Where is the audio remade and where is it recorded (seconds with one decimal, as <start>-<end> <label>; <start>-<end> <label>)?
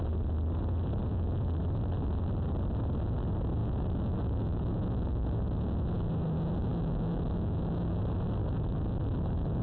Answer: 0.0-1.1 recorded; 1.1-1.6 remade; 1.6-3.6 recorded; 3.6-5.1 remade; 5.1-6.7 recorded; 6.7-8.0 remade; 8.0-8.4 recorded; 8.4-9.6 remade